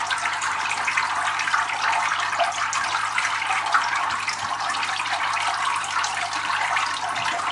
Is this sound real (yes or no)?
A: no